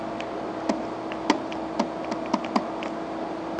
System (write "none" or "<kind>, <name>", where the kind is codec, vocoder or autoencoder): none